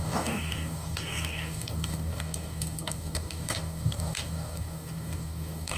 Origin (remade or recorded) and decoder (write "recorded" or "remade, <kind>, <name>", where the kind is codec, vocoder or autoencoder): remade, codec, DAC